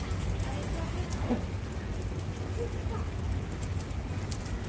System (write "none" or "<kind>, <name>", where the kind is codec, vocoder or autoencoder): none